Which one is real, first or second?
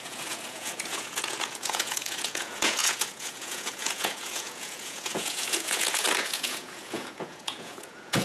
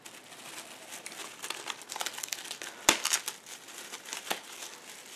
second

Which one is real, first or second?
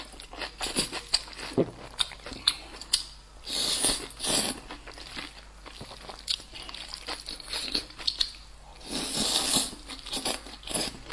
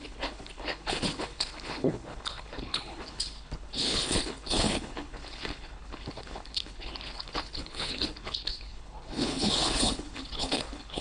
first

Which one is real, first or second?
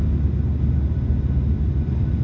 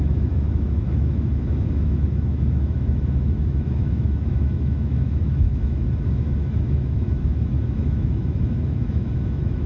first